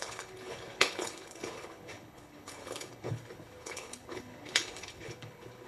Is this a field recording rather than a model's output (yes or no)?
no